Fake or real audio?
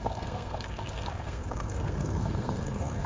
fake